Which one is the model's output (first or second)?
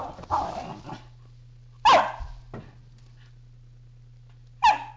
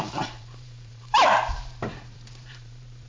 second